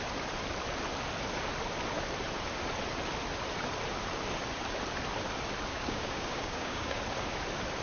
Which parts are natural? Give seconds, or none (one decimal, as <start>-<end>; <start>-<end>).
0.0-5.7; 7.0-7.8